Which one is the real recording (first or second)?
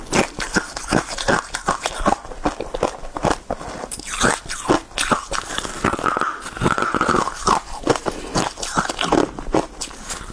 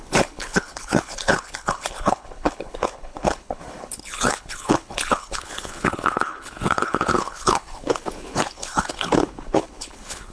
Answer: first